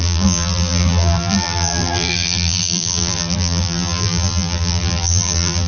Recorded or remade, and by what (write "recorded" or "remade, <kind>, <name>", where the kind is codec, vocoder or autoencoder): remade, vocoder, BigVGAN v2